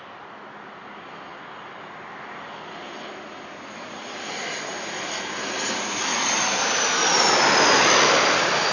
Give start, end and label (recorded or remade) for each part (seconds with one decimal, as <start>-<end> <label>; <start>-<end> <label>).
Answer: 0.0-8.7 recorded